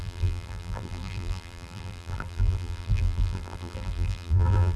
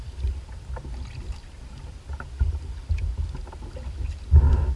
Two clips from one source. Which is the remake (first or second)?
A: first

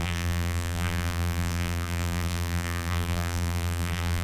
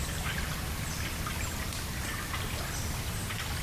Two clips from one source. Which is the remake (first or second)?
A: first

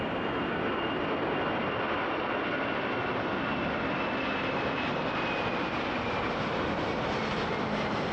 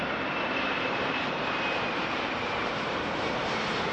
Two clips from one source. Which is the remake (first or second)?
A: second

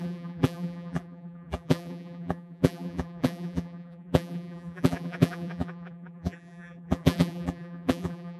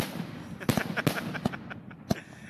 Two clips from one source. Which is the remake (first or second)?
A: first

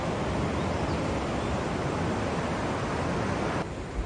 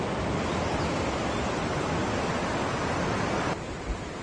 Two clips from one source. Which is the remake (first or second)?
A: second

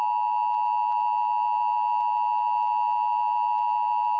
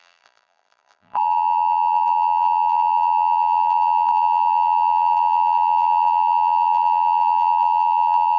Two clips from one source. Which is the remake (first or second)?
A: second